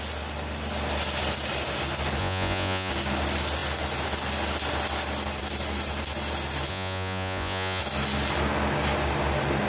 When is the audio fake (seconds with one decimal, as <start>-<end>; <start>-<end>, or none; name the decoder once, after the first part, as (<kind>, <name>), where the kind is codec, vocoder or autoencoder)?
2.2-2.9 (vocoder, Vocos); 6.7-7.8

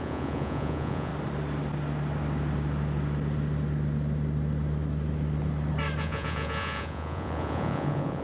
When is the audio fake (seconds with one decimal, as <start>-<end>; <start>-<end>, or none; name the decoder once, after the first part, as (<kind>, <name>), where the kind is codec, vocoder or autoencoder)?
0.0-1.1 (vocoder, Vocos); 6.0-8.2

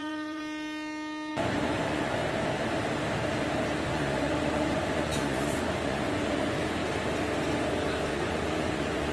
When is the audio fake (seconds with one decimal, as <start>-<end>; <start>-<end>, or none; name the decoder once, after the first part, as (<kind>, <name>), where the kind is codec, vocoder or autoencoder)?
0.0-0.4 (vocoder, Vocos); 1.3-2.2; 3.9-6.8; 8.1-9.1

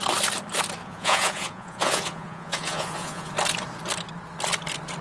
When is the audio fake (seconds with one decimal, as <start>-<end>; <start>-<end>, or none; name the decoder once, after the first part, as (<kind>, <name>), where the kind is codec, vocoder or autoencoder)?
0.8-3.3 (vocoder, Vocos)

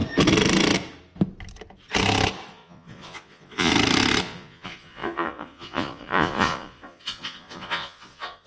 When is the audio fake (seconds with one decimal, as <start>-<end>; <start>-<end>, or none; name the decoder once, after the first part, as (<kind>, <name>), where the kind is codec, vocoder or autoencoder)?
2.5-3.7 (vocoder, Vocos); 4.2-8.5

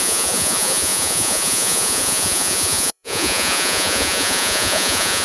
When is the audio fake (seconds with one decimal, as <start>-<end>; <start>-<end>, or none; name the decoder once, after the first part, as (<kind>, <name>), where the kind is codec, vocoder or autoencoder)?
0.0-5.2 (vocoder, Vocos)

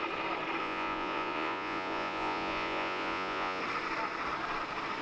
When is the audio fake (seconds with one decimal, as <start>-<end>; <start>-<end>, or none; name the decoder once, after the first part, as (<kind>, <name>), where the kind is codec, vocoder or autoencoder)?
0.6-3.6 (vocoder, Vocos)